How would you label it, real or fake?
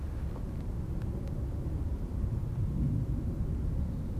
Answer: real